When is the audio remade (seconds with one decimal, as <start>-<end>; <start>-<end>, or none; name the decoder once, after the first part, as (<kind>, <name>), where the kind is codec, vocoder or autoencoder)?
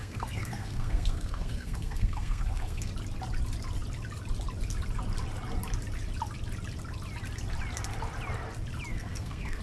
0.0-2.9 (codec, SNAC); 8.9-9.6